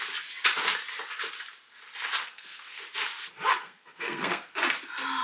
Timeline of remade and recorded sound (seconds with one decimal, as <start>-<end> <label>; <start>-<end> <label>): 0.0-2.2 recorded; 2.2-2.8 remade; 2.8-3.5 recorded; 3.5-4.5 remade; 4.5-5.2 recorded